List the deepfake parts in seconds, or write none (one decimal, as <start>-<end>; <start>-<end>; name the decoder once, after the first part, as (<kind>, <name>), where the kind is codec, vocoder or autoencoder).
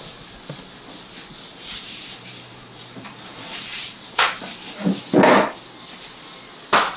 1.5-4.9 (vocoder, BigVGAN v2)